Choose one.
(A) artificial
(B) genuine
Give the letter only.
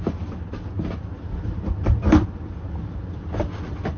B